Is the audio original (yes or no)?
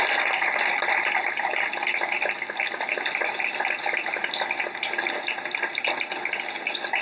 yes